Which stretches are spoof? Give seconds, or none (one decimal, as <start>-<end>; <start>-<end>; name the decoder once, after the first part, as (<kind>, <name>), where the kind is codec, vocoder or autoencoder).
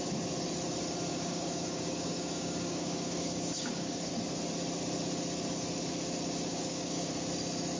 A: 1.1-4.1 (codec, DAC); 6.5-7.1